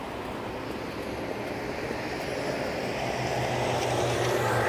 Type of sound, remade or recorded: recorded